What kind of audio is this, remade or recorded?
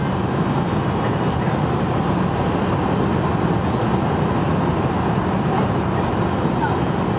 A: recorded